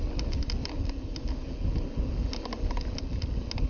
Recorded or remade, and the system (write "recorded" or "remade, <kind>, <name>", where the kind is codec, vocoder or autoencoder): recorded